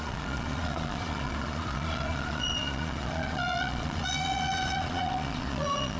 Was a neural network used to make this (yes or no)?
yes